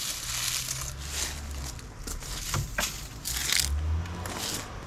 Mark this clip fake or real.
real